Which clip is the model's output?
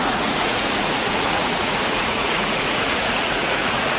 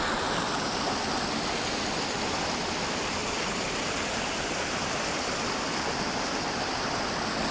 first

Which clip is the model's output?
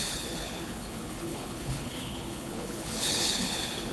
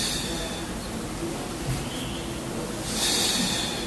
first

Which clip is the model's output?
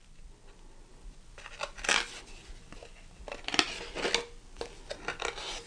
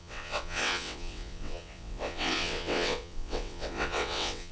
second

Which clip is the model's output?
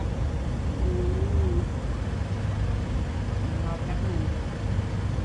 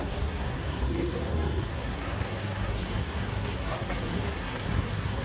second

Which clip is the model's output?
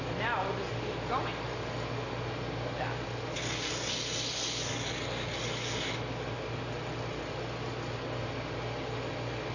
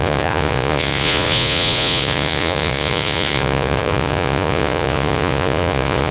second